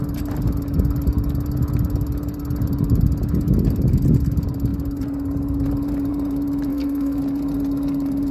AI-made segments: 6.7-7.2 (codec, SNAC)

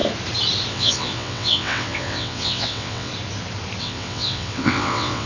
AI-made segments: 0.7-3.1 (vocoder, WaveNeXt); 3.8-5.3

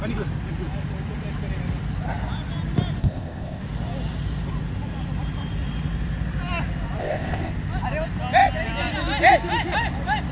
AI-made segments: 3.0-3.6 (codec, ZipCodec); 7.0-7.5

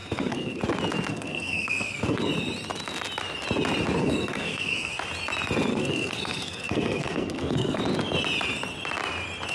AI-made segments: 0.0-0.6 (codec, SNAC); 1.1-2.3; 4.0-4.9; 5.7-7.8

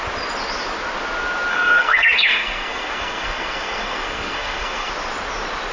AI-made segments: 1.5-4.9 (codec, SNAC)

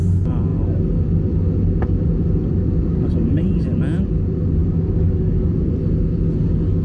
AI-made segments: 4.6-5.5 (codec, DAC)

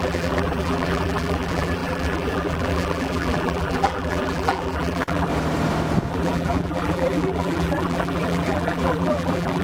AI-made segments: 0.0-5.3 (vocoder, BigVGAN v2); 6.1-9.6

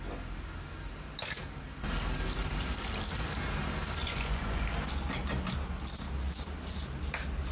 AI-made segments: 4.0-4.6 (vocoder, Vocos)